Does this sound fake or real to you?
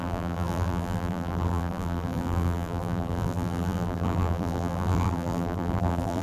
fake